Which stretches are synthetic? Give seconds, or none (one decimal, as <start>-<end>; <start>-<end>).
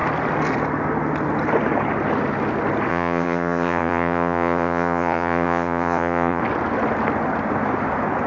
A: 2.9-6.4